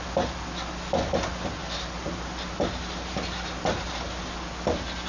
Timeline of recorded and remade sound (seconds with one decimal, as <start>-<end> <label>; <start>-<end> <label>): 0.0-5.1 recorded